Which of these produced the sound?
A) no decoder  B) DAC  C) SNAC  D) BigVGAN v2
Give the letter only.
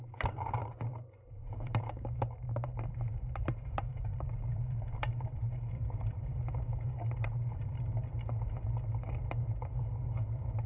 D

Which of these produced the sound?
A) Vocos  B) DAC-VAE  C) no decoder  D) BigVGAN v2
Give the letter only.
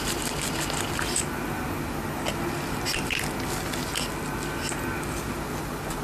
C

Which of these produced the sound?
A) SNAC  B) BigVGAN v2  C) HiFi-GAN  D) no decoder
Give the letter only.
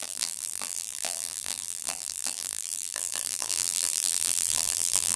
B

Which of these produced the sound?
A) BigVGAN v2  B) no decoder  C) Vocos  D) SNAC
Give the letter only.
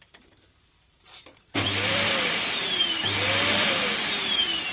A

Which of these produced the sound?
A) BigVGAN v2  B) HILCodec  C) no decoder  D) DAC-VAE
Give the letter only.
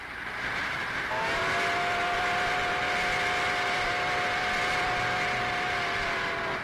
A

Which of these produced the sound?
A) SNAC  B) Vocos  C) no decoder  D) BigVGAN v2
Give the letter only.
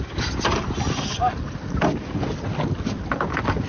C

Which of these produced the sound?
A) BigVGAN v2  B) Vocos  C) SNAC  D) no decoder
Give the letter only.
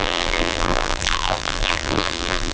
A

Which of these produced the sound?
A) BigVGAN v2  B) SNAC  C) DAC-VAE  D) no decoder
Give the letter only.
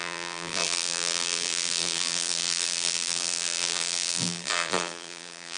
A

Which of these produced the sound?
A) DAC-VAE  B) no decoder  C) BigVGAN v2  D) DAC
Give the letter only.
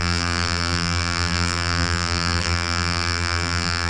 C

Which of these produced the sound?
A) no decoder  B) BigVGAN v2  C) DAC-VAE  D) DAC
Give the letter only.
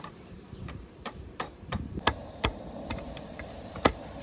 B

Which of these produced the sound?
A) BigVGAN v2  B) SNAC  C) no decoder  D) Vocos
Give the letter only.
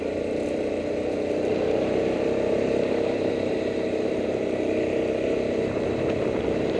A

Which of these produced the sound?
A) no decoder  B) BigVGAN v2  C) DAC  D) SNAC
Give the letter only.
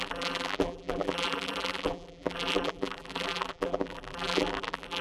B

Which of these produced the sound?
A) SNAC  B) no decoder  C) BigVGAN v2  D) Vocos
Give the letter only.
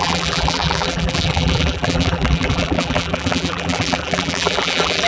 C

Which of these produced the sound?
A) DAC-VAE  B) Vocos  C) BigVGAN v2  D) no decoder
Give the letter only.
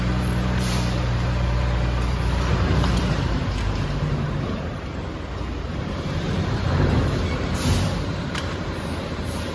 C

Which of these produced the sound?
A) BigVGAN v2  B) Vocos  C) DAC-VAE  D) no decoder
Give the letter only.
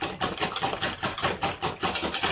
D